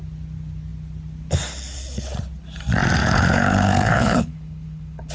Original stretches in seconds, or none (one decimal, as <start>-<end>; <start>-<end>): 0.0-3.0